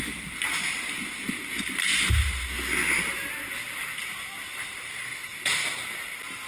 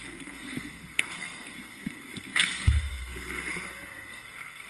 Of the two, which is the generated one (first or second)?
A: second